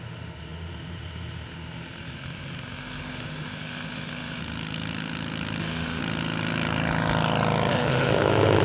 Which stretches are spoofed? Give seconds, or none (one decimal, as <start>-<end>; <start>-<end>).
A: 0.0-4.4; 5.6-6.0; 7.7-8.6